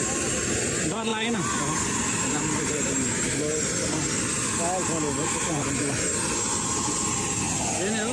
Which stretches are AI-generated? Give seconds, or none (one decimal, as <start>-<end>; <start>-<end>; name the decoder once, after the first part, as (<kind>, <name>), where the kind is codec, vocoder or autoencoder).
none